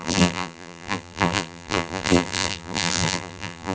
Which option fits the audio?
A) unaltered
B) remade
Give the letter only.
B